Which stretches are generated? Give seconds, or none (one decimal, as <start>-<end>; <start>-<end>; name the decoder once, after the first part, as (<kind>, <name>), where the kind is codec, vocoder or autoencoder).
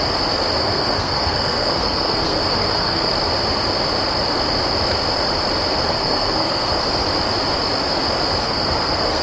0.6-3.1 (codec, SNAC); 5.9-6.8; 8.4-9.2